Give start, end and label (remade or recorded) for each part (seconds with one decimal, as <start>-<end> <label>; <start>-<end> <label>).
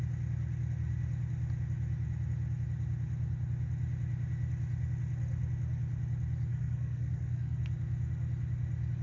0.0-6.5 recorded; 6.5-7.6 remade; 7.6-9.0 recorded